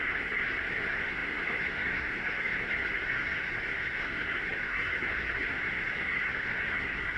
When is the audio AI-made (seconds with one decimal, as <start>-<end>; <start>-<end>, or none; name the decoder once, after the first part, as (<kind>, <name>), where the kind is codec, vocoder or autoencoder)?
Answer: 0.0-7.2 (codec, SNAC)